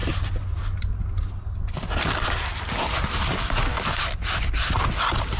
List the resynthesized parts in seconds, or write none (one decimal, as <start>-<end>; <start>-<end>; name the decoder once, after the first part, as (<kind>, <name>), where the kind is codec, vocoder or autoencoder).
0.0-0.6 (vocoder, BigVGAN v2); 3.7-4.6